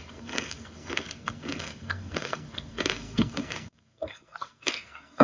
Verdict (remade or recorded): remade